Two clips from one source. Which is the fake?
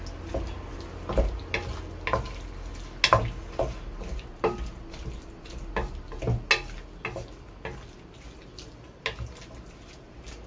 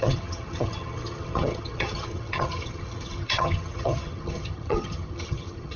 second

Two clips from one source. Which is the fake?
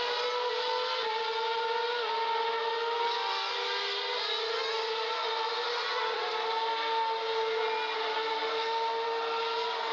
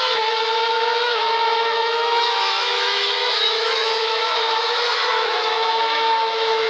second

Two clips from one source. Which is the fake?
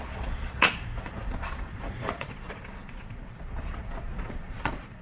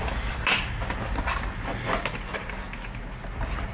first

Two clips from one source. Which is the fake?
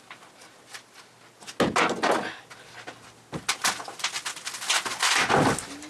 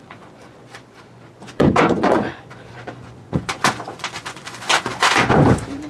second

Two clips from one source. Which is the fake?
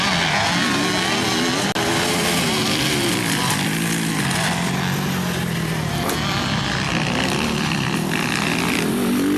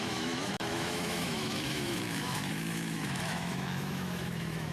second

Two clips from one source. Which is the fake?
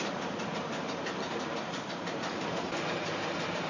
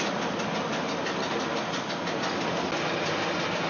first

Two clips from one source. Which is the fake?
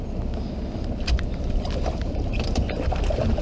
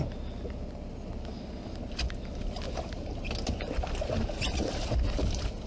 first